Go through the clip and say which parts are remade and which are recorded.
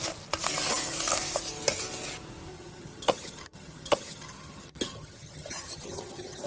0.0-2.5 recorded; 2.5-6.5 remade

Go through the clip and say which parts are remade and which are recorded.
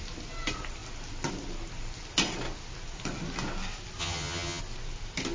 0.0-4.0 recorded; 4.0-4.6 remade; 4.6-5.3 recorded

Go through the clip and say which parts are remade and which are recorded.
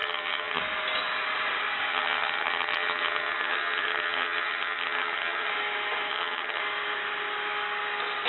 0.0-0.6 remade; 0.6-1.9 recorded; 1.9-5.5 remade; 5.5-6.1 recorded; 6.1-6.6 remade; 6.6-8.3 recorded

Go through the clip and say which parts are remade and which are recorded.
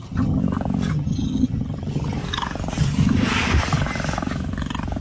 0.0-0.4 remade; 0.4-0.9 recorded; 0.9-2.2 remade; 2.2-5.0 recorded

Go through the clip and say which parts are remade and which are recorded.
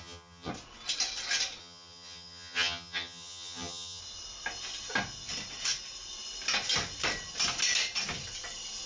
0.0-0.5 remade; 0.5-1.6 recorded; 1.6-4.0 remade; 4.0-8.9 recorded